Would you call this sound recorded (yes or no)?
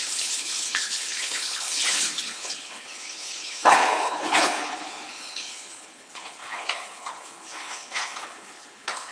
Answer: no